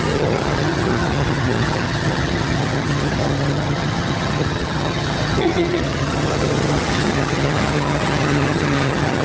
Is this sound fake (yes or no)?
yes